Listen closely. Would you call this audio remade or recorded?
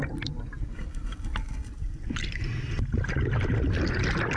recorded